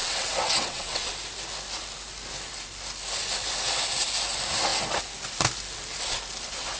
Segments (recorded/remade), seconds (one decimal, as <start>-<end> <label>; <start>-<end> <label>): 0.0-1.1 remade; 1.1-6.8 recorded